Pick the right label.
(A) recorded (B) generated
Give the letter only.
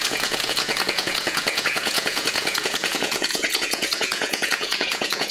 B